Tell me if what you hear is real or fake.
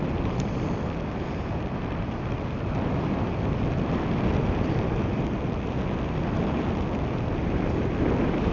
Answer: real